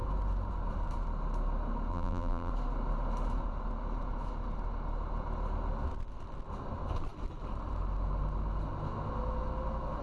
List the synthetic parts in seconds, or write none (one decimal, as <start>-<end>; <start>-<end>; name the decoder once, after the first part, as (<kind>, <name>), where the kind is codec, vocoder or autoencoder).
1.9-2.5 (vocoder, BigVGAN v2)